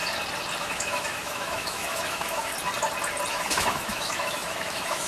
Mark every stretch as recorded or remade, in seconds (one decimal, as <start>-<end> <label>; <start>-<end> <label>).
0.0-0.6 recorded; 0.6-2.5 remade; 2.5-3.3 recorded; 3.3-5.1 remade